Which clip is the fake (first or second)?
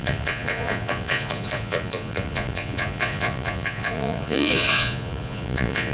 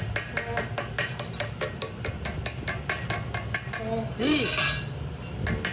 first